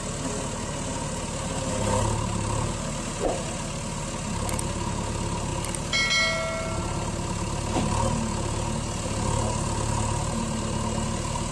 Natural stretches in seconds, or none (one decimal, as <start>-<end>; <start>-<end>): 0.0-11.5